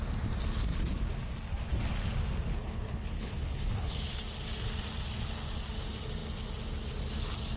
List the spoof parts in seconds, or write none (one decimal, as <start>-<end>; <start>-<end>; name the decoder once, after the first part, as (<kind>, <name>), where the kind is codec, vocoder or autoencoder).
2.5-4.0 (codec, HILCodec)

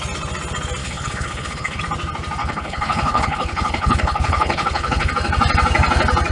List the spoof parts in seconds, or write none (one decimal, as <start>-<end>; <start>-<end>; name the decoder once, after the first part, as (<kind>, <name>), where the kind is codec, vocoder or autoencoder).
0.8-1.8 (codec, HILCodec); 2.4-5.1

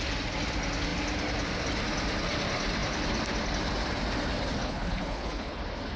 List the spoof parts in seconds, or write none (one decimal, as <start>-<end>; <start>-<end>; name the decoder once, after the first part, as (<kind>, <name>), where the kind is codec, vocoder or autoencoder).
4.6-5.6 (codec, HILCodec)